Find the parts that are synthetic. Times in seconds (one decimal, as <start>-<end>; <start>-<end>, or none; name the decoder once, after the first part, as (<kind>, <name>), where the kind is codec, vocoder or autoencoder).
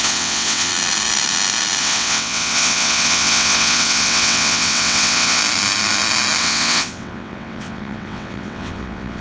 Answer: 0.0-0.7 (vocoder, WaveNeXt); 1.8-5.4; 6.4-9.2